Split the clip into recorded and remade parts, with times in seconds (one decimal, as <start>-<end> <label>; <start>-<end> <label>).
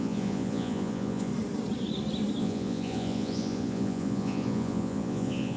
0.0-1.3 remade; 1.3-2.4 recorded; 2.4-5.6 remade